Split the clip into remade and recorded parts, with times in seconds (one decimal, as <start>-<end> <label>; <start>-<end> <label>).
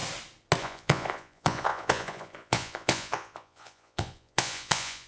0.0-0.6 recorded; 0.6-5.1 remade